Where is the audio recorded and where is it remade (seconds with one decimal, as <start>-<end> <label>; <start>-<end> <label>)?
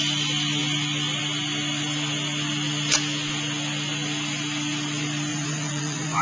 0.0-5.3 recorded; 5.3-6.2 remade